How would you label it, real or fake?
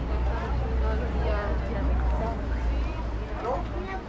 real